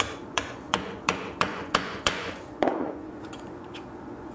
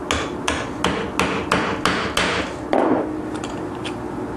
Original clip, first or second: second